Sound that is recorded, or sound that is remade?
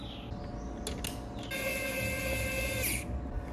recorded